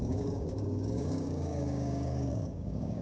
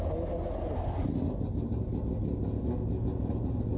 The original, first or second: second